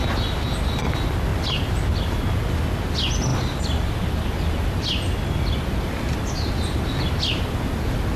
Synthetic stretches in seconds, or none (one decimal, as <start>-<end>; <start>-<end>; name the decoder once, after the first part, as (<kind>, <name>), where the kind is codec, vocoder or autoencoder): none